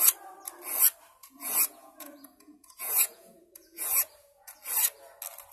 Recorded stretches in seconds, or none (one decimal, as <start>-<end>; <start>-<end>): 0.0-1.2; 4.5-5.5